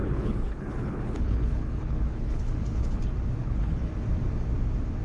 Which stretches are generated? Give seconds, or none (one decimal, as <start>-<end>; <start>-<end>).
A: 0.0-3.0; 3.4-3.9